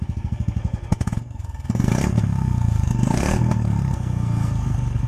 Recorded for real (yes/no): no